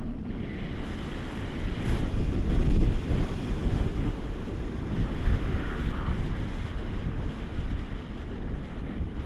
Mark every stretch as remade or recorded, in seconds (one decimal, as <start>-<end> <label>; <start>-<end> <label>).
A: 0.0-3.6 recorded; 3.6-4.5 remade; 4.5-5.2 recorded; 5.2-5.8 remade; 5.8-6.5 recorded; 6.5-7.6 remade; 7.6-9.3 recorded

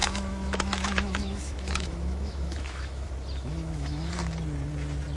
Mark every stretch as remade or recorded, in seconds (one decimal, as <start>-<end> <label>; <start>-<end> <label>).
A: 0.0-3.1 remade; 3.1-3.5 recorded; 3.5-4.1 remade; 4.1-5.2 recorded

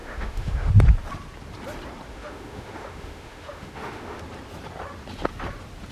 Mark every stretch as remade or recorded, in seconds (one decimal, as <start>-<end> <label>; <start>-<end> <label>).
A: 0.0-0.7 remade; 0.7-2.1 recorded; 2.1-4.2 remade; 4.2-5.9 recorded

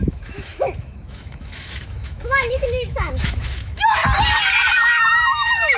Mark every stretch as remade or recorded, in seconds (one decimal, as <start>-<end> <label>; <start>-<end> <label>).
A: 0.0-4.0 remade; 4.0-4.7 recorded; 4.7-5.8 remade